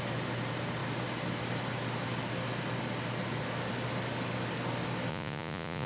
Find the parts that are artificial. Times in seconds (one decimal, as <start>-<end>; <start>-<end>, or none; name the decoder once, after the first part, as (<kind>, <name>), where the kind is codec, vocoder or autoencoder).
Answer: 5.1-5.9 (vocoder, Vocos)